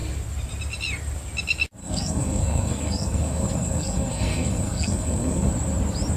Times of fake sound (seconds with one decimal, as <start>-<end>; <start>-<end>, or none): 1.8-5.5